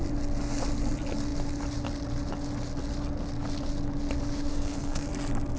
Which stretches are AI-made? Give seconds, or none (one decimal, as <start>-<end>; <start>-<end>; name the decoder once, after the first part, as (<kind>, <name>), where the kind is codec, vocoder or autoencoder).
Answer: 4.5-5.1 (codec, SNAC)